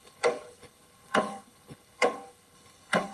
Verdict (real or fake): fake